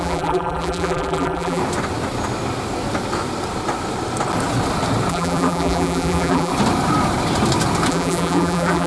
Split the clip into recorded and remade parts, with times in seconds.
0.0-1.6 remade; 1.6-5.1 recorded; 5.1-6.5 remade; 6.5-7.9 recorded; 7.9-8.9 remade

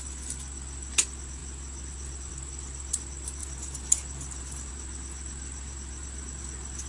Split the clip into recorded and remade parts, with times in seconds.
0.0-3.4 recorded; 3.4-4.7 remade; 4.7-6.9 recorded

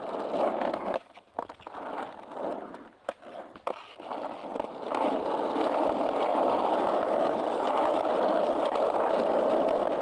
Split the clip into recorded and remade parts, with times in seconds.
0.0-4.5 recorded; 4.5-5.4 remade; 5.4-10.0 recorded

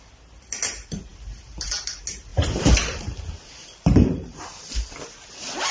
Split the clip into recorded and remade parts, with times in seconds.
0.0-1.1 recorded; 1.1-1.7 remade; 1.7-2.3 recorded; 2.3-4.4 remade; 4.4-5.7 recorded

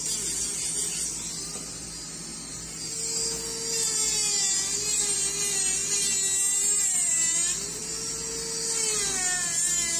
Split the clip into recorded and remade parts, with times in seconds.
0.0-10.0 recorded